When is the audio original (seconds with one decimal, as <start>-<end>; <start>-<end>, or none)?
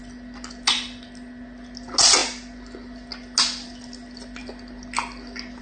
0.0-5.6